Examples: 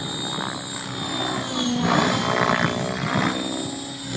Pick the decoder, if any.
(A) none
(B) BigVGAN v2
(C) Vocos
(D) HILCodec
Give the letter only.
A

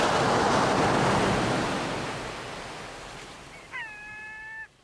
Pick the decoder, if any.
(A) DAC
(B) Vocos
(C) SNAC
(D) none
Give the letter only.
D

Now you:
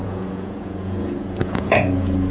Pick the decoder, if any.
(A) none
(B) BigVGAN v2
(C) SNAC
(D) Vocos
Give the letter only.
D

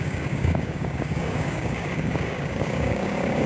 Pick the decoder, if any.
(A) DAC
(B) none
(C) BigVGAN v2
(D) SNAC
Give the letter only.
A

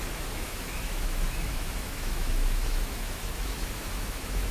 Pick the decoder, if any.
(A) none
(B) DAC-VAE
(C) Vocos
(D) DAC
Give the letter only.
B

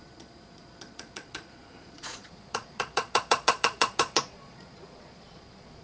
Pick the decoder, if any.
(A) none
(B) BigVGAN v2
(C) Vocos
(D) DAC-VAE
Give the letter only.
C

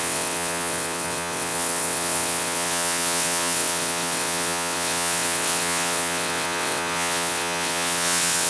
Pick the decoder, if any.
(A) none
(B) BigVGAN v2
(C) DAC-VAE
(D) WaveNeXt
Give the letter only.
D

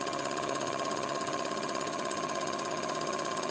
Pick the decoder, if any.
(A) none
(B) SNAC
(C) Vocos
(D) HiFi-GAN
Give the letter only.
D